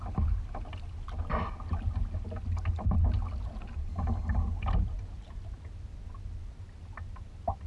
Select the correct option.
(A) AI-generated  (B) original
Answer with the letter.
B